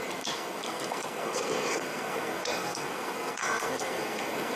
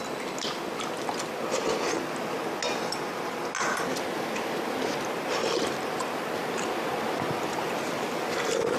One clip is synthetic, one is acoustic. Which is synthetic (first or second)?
first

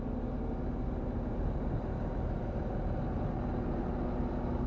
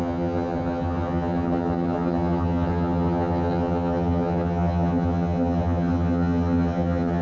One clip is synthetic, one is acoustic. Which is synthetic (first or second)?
second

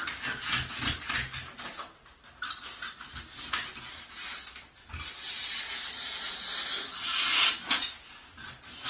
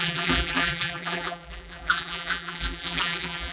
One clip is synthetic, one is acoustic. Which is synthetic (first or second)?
second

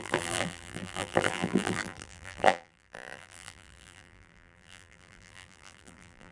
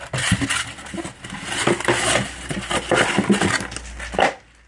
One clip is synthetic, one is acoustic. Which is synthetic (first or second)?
first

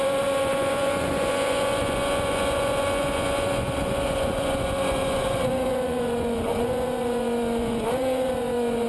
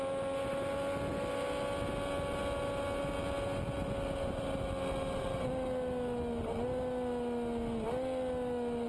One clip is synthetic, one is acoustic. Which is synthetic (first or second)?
first